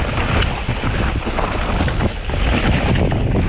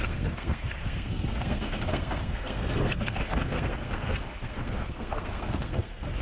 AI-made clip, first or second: second